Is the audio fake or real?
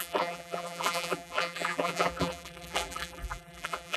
fake